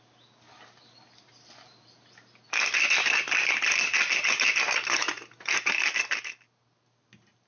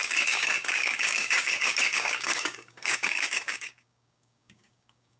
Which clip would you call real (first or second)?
first